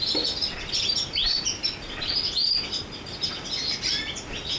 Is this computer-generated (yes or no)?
no